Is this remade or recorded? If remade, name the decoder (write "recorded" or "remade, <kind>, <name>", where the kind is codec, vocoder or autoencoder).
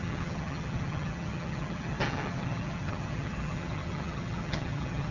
remade, vocoder, HiFi-GAN